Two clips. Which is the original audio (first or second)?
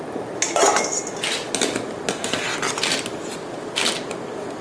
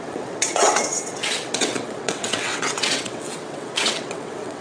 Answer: first